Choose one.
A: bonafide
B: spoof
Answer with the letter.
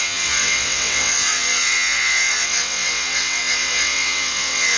B